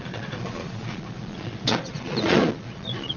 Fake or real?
fake